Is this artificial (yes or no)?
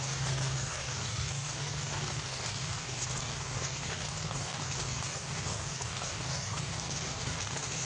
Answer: yes